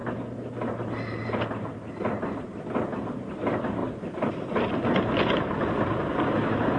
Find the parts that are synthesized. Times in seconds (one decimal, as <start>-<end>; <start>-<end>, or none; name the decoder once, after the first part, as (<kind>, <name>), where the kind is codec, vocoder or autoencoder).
none